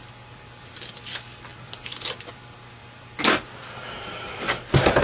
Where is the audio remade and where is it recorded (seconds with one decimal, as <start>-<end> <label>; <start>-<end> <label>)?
0.0-5.0 recorded